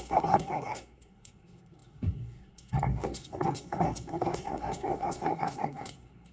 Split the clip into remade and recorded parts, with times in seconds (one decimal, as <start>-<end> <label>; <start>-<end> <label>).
0.0-6.3 remade

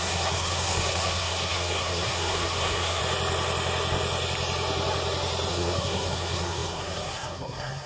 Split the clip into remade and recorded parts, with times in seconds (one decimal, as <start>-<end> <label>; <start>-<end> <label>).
0.0-3.0 remade; 3.0-5.5 recorded; 5.5-7.9 remade

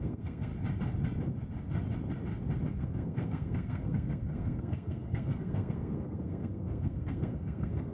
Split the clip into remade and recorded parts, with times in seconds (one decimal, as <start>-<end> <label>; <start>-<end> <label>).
0.0-0.5 remade; 0.5-2.8 recorded; 2.8-7.9 remade

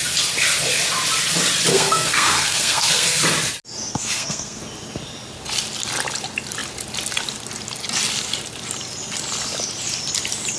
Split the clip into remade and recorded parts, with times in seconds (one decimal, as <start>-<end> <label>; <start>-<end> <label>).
0.0-1.7 recorded; 1.7-3.2 remade; 3.2-3.9 recorded; 3.9-4.6 remade; 4.6-10.6 recorded

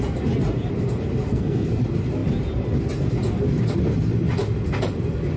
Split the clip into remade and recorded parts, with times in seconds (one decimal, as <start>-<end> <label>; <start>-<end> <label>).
0.0-1.3 recorded; 1.3-1.8 remade; 1.8-5.4 recorded

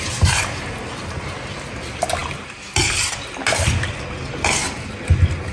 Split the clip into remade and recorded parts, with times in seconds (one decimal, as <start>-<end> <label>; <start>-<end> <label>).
0.0-5.5 recorded

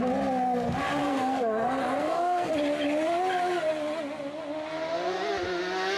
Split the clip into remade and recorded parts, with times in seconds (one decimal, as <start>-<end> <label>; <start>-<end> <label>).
0.0-1.0 recorded; 1.0-2.5 remade; 2.5-6.0 recorded

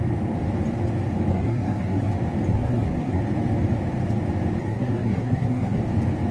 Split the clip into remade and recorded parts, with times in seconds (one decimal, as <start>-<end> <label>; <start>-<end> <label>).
0.0-1.3 recorded; 1.3-2.1 remade; 2.1-2.5 recorded; 2.5-3.2 remade; 3.2-4.6 recorded; 4.6-5.8 remade; 5.8-6.3 recorded